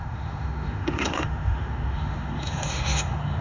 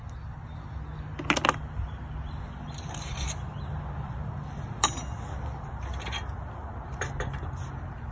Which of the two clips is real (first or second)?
second